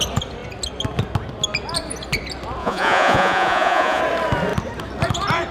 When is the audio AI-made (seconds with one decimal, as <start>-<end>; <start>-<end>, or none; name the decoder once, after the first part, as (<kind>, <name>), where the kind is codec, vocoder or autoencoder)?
2.6-4.0 (vocoder, Vocos)